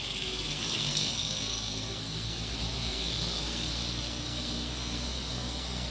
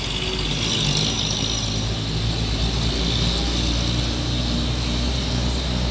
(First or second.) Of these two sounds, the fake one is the first